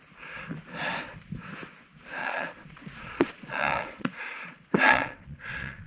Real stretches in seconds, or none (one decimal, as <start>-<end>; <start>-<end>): 0.0-2.2